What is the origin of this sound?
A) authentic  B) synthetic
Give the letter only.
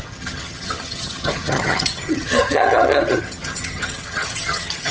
B